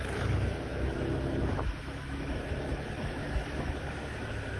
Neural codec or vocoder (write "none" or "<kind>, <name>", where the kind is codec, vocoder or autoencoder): autoencoder, DAC-VAE